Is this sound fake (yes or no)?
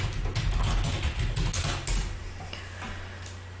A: no